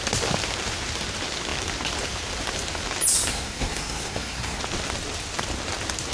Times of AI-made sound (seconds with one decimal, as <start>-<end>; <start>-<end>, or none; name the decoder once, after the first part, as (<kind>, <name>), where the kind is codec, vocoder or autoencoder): 3.3-4.6 (codec, SNAC)